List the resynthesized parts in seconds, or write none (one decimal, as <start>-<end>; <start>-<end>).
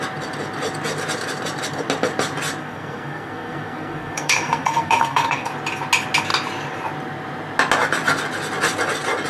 2.6-5.5